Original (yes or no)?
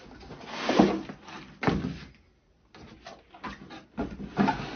yes